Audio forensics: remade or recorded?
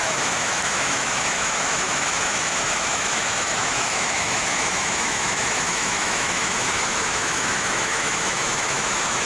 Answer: remade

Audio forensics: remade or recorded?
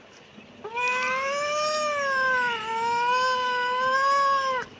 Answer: recorded